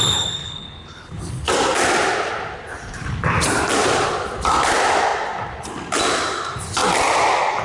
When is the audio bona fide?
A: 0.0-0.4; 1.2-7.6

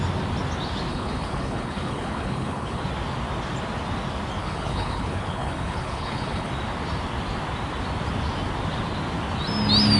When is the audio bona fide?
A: 0.0-0.9; 2.8-4.4; 6.5-10.0

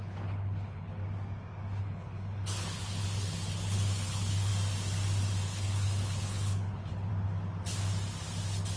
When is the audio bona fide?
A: 1.0-1.8; 4.5-5.4; 7.1-8.8

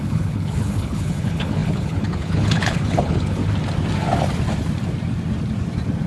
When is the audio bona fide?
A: 3.4-6.1

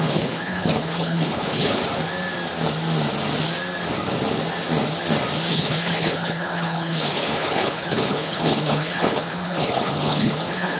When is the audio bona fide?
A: 1.8-5.5

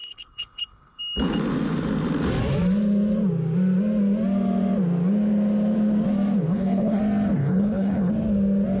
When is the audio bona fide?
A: 1.0-6.5; 7.0-7.4; 8.1-8.8